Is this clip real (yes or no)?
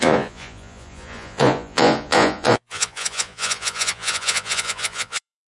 no